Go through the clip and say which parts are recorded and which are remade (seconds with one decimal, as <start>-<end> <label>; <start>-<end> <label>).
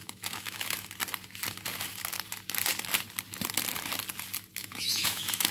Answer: 0.0-0.9 remade; 0.9-4.6 recorded; 4.6-5.5 remade